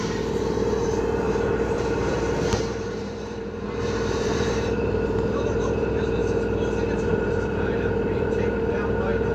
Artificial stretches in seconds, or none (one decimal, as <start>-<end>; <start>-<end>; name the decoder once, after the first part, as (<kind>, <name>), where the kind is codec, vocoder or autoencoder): 0.0-6.2 (vocoder, BigVGAN v2); 7.0-9.3